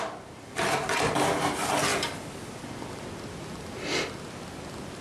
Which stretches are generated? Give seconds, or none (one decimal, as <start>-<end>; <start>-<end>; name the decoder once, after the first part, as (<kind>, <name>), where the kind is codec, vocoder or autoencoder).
none